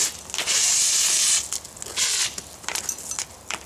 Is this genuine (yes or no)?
yes